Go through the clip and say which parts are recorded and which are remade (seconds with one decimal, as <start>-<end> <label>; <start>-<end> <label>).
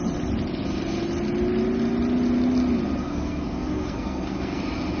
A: 0.0-3.0 recorded; 3.0-4.6 remade; 4.6-5.0 recorded